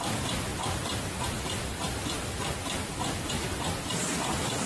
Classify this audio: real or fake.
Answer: fake